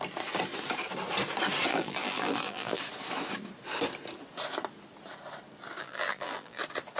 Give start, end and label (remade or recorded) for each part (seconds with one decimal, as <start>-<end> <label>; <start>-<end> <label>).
0.0-1.7 recorded; 1.7-2.8 remade; 2.8-5.8 recorded; 5.8-6.6 remade; 6.6-7.0 recorded